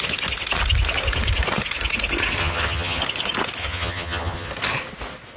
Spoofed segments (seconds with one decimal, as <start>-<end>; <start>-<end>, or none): 2.4-3.0; 3.6-4.5